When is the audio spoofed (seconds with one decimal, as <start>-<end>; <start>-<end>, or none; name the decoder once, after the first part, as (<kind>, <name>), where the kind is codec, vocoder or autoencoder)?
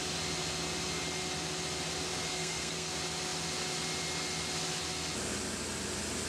2.3-2.9 (codec, SNAC)